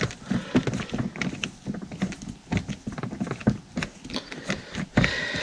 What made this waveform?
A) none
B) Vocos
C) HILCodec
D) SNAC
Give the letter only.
A